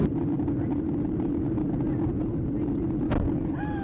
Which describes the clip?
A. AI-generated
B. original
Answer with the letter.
B